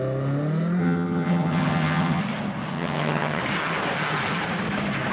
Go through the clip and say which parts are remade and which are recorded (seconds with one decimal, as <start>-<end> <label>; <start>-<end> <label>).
0.0-0.8 recorded; 0.8-2.2 remade; 2.2-2.7 recorded; 2.7-3.4 remade; 3.4-5.1 recorded

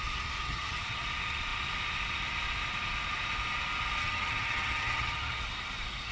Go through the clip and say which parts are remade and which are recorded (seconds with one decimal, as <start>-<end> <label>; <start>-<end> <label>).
0.0-0.5 recorded; 0.5-1.0 remade; 1.0-4.0 recorded; 4.0-5.4 remade; 5.4-6.1 recorded

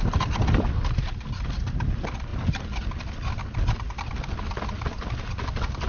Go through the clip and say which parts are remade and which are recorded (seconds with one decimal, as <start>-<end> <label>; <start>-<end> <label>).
0.0-5.9 recorded

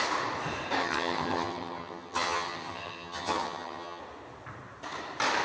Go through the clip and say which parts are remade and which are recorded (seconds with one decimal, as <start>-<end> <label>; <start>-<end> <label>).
0.0-0.8 recorded; 0.8-4.0 remade; 4.0-5.4 recorded

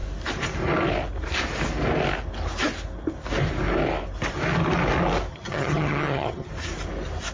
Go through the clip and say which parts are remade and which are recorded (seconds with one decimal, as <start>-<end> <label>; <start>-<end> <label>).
0.0-5.3 recorded; 5.3-6.5 remade; 6.5-7.3 recorded

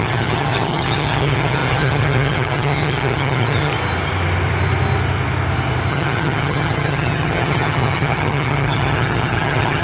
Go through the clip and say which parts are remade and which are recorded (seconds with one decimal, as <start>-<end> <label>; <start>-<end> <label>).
0.0-3.7 remade; 3.7-5.9 recorded; 5.9-9.8 remade

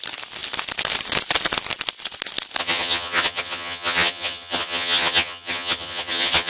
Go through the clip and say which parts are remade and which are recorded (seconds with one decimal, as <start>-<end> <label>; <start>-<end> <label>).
0.0-2.6 recorded; 2.6-6.5 remade